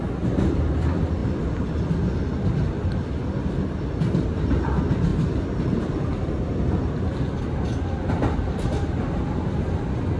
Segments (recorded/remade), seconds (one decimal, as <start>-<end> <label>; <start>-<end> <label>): 0.0-10.2 recorded